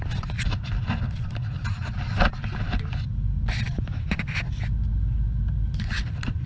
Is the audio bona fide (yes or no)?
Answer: yes